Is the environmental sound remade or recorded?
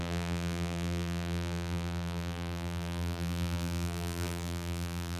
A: remade